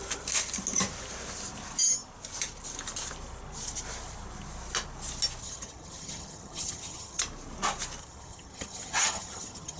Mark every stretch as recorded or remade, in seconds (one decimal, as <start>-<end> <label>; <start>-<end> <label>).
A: 0.0-5.4 recorded; 5.4-7.2 remade; 7.2-8.0 recorded; 8.0-9.8 remade